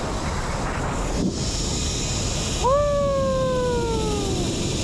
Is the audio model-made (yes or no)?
no